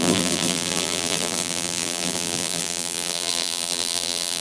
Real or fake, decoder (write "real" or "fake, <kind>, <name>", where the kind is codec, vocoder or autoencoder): fake, vocoder, BigVGAN v2